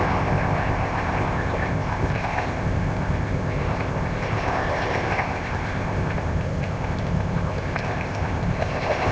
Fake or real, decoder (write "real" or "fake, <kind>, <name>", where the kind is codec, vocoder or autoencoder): fake, codec, ZipCodec